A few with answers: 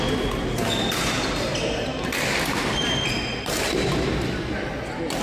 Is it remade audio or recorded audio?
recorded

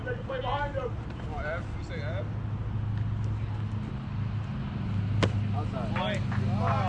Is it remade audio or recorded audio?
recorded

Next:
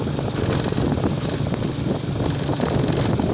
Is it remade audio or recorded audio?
recorded